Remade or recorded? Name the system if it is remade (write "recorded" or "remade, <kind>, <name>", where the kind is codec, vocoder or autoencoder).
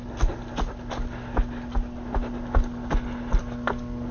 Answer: recorded